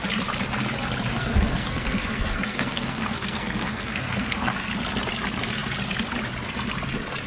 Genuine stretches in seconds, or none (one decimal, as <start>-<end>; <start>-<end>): 0.0-1.1; 4.7-7.3